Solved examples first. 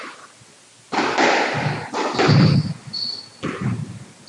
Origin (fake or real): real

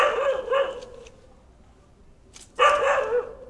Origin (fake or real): real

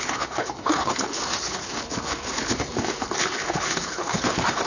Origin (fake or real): fake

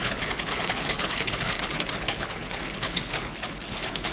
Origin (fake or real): fake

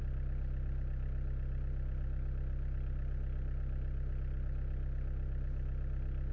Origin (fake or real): real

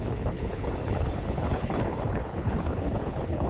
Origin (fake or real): fake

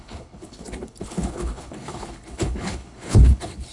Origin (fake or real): fake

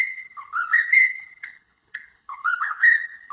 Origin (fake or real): fake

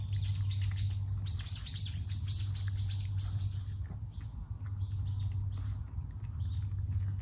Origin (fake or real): real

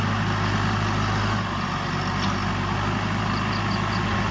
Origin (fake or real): real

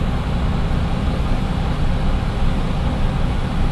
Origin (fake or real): real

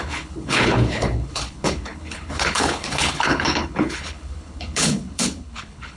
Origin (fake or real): fake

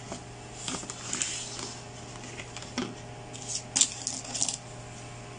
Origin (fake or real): real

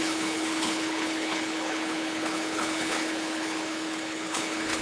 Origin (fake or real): fake